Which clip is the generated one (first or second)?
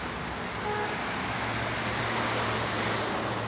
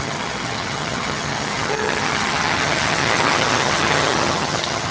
second